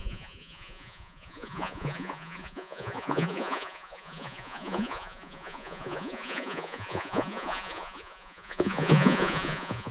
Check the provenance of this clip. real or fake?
fake